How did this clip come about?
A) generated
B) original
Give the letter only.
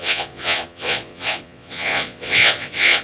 A